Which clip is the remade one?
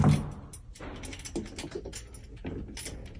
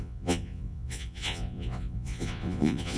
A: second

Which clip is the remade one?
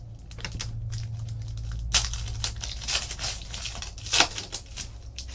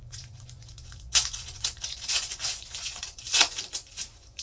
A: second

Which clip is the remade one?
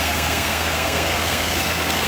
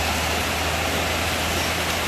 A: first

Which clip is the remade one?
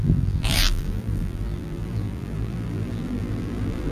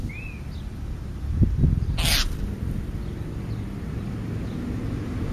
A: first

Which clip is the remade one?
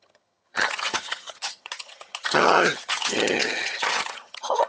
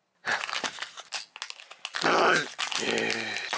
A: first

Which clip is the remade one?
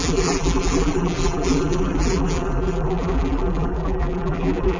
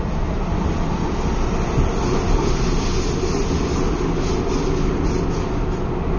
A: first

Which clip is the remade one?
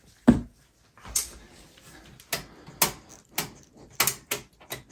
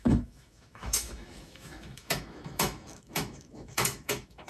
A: second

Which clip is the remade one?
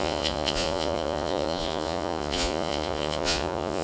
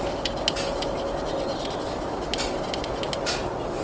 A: first